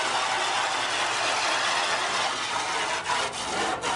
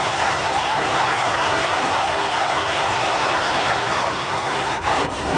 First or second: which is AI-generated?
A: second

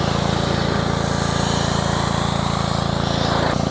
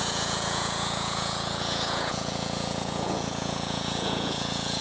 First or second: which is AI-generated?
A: second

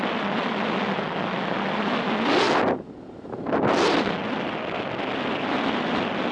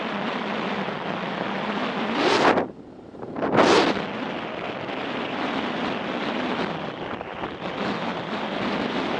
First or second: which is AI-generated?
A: second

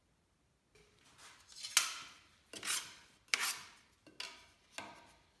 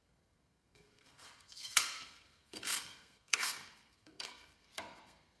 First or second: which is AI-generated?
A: second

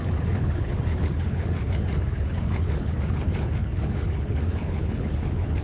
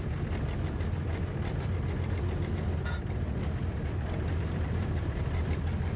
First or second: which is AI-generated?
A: first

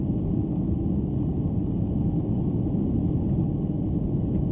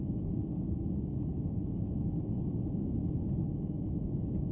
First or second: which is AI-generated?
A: second